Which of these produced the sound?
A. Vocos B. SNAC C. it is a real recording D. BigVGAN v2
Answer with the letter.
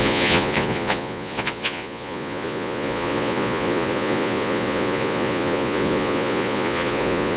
A